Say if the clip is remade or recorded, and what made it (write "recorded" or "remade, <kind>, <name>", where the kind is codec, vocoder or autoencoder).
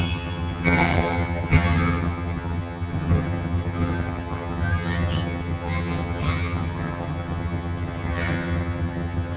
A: remade, vocoder, HiFi-GAN